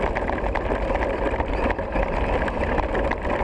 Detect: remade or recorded recorded